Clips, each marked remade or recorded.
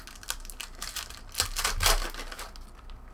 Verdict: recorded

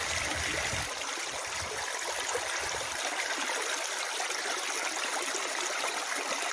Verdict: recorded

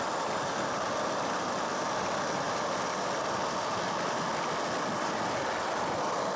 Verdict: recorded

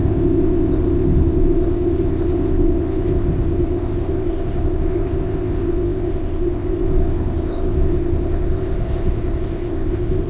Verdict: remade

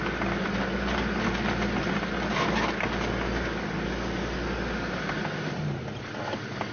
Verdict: recorded